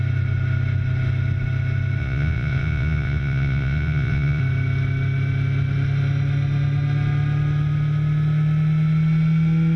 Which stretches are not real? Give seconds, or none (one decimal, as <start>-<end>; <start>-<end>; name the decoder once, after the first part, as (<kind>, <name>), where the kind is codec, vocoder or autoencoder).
2.0-4.4 (vocoder, Vocos)

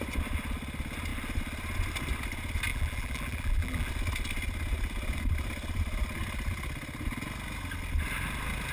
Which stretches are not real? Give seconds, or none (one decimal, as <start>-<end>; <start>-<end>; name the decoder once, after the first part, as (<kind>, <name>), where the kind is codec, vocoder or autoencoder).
2.7-3.9 (vocoder, BigVGAN v2)

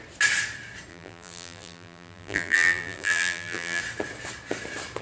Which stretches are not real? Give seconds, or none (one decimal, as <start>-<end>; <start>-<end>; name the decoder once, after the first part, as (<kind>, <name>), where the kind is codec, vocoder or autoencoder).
0.9-3.8 (vocoder, BigVGAN v2)

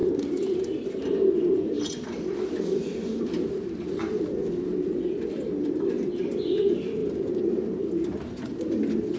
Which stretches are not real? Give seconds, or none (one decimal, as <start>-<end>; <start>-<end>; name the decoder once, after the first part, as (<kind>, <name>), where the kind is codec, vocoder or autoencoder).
0.0-3.9 (vocoder, BigVGAN v2); 4.7-5.9

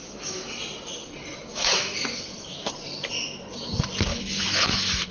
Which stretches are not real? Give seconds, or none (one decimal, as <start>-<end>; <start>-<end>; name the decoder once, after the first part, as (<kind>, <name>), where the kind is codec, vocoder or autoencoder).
0.0-0.5 (autoencoder, DAC-VAE); 1.5-2.7; 4.1-5.1

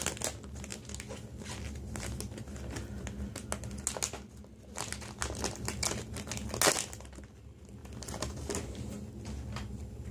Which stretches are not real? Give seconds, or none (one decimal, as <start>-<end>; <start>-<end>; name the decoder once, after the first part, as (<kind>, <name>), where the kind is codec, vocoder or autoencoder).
none

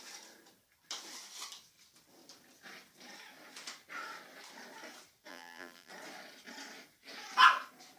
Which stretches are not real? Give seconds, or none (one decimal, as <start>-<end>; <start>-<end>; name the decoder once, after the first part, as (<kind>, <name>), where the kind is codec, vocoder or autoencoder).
5.3-5.9 (vocoder, BigVGAN v2)

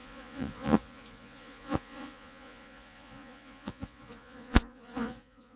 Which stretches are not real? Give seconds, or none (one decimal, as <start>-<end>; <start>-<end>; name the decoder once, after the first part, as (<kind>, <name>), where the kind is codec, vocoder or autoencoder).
0.0-5.6 (vocoder, Vocos)